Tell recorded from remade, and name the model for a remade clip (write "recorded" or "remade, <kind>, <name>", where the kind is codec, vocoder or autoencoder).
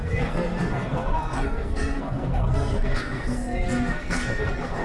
remade, codec, SNAC